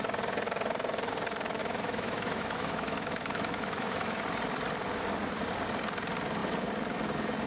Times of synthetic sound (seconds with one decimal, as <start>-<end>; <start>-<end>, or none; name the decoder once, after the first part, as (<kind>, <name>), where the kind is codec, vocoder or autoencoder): 1.6-4.2 (autoencoder, DAC-VAE)